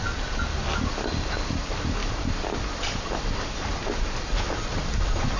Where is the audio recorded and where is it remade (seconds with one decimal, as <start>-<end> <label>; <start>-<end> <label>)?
0.0-5.4 recorded